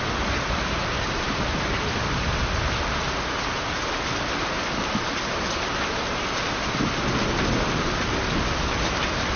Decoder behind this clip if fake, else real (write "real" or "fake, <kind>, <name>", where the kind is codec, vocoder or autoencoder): real